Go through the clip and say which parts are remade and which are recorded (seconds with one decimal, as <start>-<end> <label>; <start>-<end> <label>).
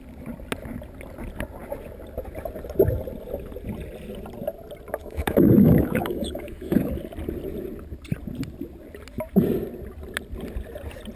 0.0-5.0 recorded; 5.0-6.9 remade; 6.9-11.2 recorded